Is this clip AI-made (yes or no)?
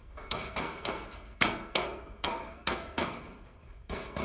yes